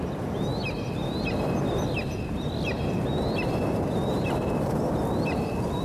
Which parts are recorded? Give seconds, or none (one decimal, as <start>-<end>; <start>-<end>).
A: 0.0-4.1; 4.9-5.8